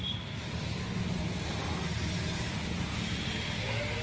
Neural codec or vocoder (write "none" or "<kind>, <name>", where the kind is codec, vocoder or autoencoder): none